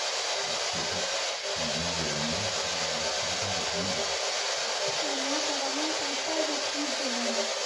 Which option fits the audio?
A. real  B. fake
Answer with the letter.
A